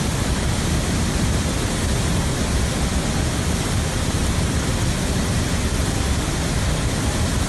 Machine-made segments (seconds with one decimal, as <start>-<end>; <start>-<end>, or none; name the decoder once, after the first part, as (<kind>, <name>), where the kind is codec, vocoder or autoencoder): none